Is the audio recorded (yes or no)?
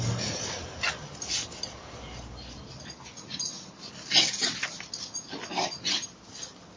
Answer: yes